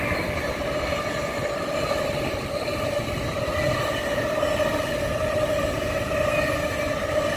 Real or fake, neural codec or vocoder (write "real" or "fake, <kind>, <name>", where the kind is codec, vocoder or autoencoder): real